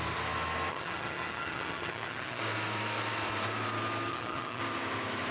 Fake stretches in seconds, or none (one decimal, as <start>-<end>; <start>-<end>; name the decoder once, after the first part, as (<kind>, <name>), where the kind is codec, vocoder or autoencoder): 0.7-2.4 (vocoder, HiFi-GAN); 4.1-4.6